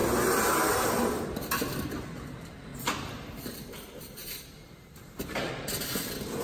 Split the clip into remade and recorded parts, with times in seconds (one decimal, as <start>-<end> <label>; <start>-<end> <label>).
0.0-2.7 recorded; 2.7-5.5 remade; 5.5-6.4 recorded